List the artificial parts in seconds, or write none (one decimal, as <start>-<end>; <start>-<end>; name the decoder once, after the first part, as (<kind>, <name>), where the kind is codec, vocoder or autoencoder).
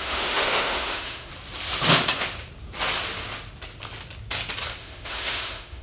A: 0.0-1.3 (autoencoder, DAC-VAE); 4.8-5.8